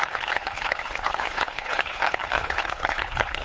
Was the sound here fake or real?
fake